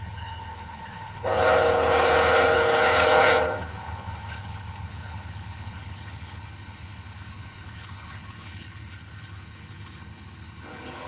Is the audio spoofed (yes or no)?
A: yes